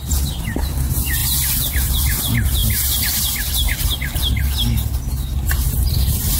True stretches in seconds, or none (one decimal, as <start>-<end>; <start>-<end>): 0.0-6.4